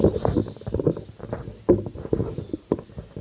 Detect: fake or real real